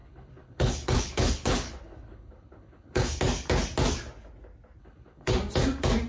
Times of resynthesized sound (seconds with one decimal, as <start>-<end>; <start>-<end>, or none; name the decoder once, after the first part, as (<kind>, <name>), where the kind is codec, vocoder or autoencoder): 0.0-3.2 (codec, HILCodec); 4.8-5.3